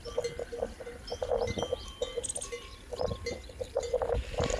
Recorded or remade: recorded